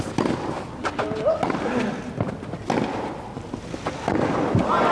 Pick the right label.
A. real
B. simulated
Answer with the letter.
A